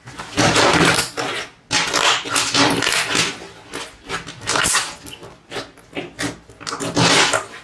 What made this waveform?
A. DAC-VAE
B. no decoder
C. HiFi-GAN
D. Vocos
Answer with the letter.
B